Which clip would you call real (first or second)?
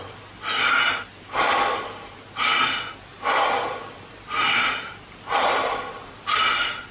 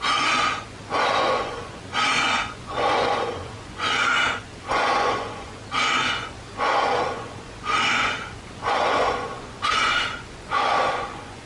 first